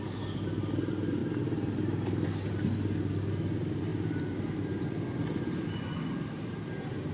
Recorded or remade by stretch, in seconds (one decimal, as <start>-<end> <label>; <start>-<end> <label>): 0.0-7.1 recorded